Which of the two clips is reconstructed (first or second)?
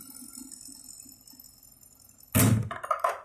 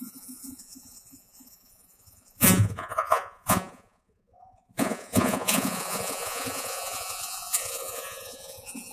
second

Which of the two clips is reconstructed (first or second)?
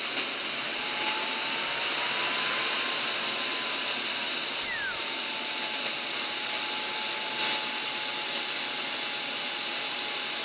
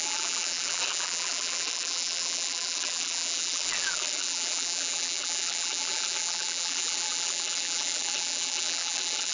second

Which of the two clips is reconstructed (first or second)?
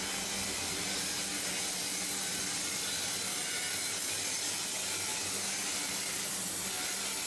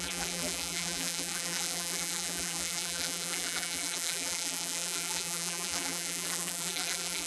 second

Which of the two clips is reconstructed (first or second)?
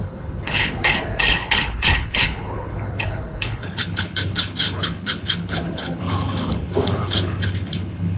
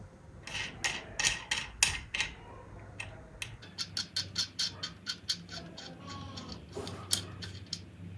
first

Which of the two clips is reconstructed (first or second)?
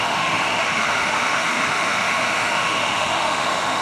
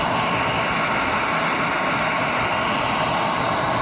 first